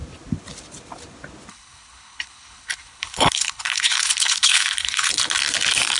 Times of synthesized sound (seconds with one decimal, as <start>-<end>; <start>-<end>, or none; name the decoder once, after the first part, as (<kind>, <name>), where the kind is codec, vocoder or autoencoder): 1.5-5.1 (codec, HILCodec)